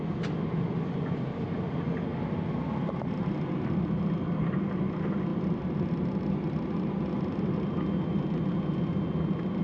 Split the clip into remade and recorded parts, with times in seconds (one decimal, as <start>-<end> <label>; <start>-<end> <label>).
0.0-9.6 recorded